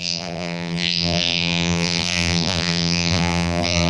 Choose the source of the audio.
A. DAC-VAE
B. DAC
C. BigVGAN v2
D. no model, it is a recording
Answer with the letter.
C